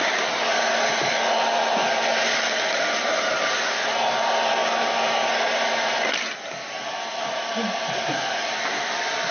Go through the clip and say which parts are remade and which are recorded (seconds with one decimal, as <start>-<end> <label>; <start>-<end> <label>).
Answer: 0.0-4.6 recorded; 4.6-5.3 remade; 5.3-9.3 recorded